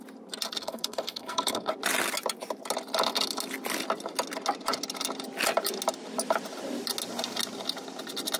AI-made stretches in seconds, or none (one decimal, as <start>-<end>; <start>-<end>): 0.6-1.7